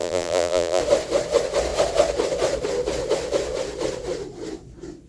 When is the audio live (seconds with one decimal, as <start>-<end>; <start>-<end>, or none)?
0.8-5.1